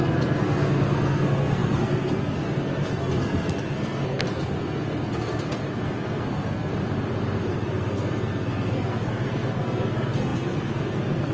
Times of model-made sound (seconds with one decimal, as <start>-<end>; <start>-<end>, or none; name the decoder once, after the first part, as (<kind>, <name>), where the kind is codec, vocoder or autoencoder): 0.0-6.7 (codec, SNAC); 7.5-11.3